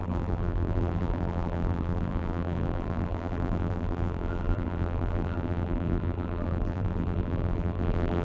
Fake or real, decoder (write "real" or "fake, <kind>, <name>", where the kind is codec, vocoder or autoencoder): fake, vocoder, BigVGAN v2